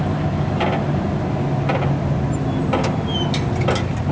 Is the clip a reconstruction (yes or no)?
no